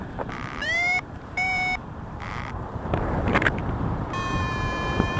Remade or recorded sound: remade